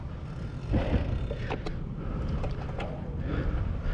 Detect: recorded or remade recorded